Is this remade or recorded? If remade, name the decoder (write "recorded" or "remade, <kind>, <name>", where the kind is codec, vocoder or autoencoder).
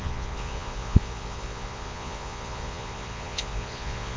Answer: remade, vocoder, Vocos